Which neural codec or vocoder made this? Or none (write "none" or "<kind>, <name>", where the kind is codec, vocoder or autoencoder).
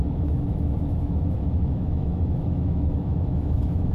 autoencoder, DAC-VAE